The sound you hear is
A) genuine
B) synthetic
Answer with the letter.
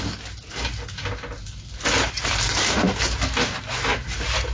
A